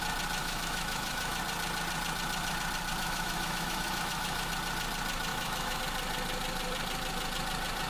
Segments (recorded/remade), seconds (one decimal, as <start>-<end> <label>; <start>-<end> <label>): 0.0-0.4 recorded; 0.4-1.4 remade; 1.4-3.0 recorded; 3.0-4.5 remade; 4.5-5.3 recorded; 5.3-5.8 remade; 5.8-7.9 recorded